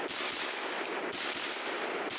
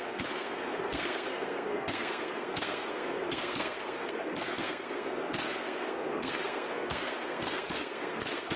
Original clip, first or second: first